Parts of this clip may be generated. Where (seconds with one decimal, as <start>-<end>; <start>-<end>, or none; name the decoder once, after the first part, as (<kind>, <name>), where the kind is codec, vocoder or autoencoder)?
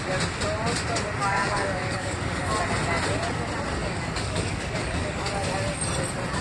1.2-2.4 (codec, DAC); 3.8-5.3